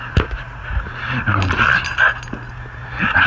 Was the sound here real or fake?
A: real